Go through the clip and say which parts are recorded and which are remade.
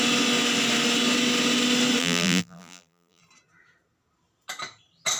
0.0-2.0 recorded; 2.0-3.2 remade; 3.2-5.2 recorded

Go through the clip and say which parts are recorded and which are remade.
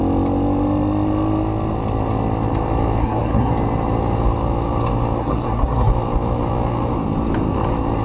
0.0-3.0 recorded; 3.0-3.5 remade; 3.5-5.2 recorded; 5.2-5.9 remade; 5.9-8.0 recorded